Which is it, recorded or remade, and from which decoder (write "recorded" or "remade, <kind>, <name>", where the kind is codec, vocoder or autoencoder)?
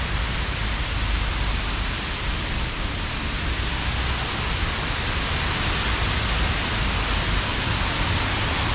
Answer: recorded